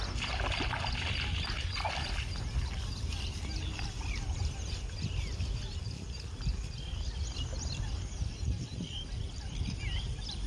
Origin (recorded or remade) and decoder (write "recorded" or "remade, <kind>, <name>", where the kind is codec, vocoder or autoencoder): recorded